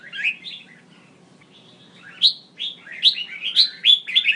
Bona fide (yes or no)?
yes